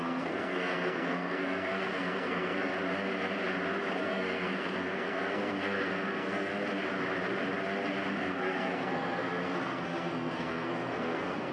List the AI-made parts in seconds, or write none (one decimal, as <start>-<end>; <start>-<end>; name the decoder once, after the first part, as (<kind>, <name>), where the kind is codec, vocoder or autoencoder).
0.0-2.7 (codec, SNAC); 4.0-6.5; 8.2-11.5